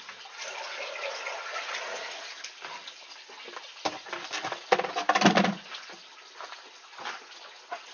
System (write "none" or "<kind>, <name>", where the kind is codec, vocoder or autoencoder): none